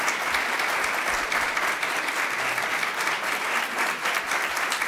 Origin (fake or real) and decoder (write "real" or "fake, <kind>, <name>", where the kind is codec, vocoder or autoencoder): real